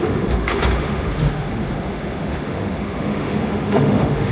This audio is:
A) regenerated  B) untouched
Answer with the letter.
A